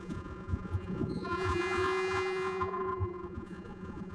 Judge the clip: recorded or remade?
remade